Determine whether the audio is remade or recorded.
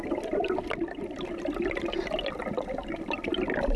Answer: recorded